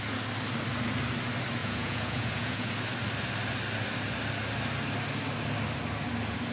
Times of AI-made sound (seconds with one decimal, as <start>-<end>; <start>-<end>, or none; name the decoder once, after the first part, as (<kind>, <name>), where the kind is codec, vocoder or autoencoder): 1.6-2.7 (vocoder, Vocos)